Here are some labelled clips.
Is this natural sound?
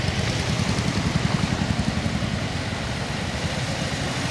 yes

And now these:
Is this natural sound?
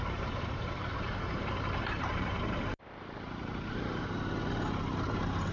no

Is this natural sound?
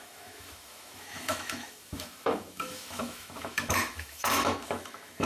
no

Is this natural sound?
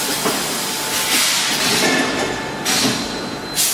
yes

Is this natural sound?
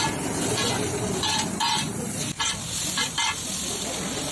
yes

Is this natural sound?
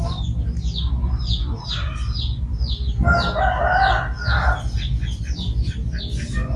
yes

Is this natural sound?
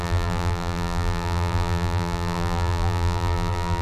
no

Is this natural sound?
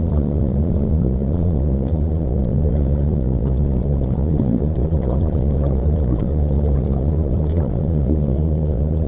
no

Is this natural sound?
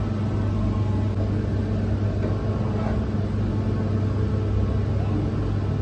yes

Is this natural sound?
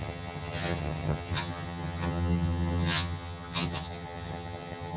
no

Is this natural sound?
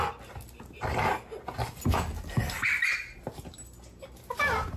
yes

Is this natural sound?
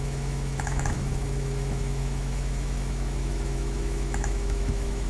no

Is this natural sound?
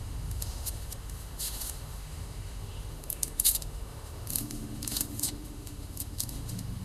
no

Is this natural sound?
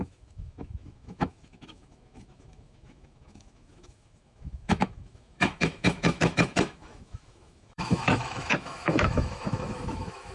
no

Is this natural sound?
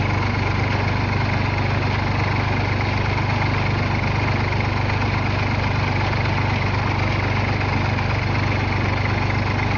yes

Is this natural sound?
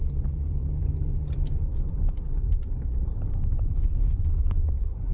no